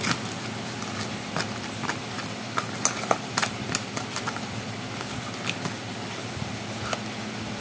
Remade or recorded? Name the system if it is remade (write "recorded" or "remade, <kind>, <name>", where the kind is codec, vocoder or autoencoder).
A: recorded